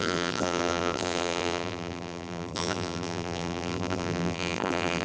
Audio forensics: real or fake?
fake